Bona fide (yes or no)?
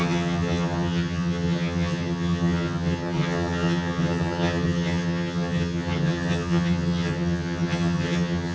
no